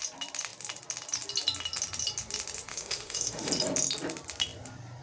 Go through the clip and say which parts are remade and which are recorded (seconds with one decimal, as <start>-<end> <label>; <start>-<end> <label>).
0.0-2.7 recorded; 2.7-3.5 remade; 3.5-5.0 recorded